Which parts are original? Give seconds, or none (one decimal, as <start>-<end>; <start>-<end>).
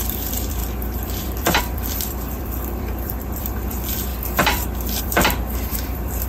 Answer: 4.1-5.0